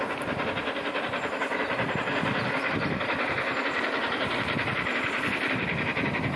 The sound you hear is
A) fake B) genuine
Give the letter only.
B